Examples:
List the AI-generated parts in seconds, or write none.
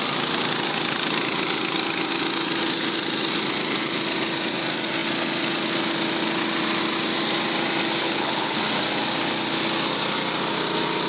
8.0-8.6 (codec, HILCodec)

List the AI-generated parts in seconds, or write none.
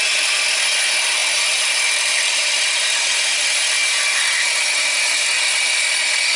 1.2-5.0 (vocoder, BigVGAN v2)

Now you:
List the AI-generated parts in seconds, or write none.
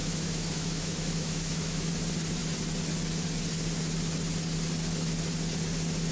0.0-1.9 (autoencoder, DAC-VAE)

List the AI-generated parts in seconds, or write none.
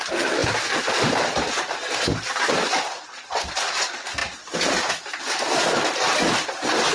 none